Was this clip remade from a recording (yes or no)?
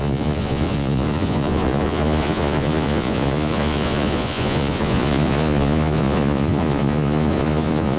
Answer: yes